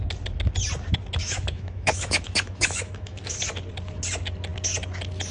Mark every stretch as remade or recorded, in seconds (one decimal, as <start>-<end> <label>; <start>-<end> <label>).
0.0-1.2 recorded; 1.2-3.4 remade; 3.4-5.3 recorded